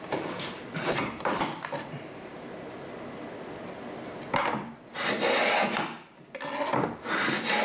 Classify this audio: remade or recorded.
recorded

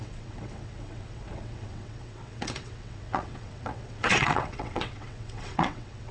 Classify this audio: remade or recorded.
remade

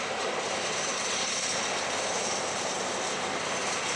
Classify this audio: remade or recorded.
recorded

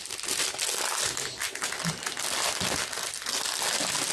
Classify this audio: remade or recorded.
recorded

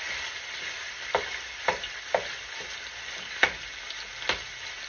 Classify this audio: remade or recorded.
recorded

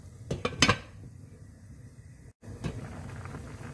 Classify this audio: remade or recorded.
recorded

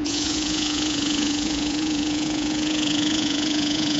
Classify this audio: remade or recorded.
remade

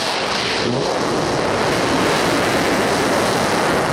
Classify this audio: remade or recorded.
recorded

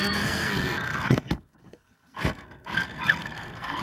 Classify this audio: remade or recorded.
remade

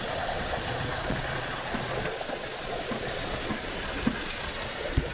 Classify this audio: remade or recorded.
remade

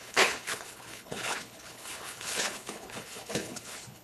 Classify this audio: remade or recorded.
remade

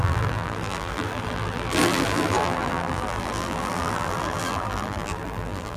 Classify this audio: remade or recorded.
remade